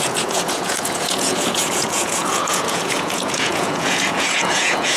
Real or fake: fake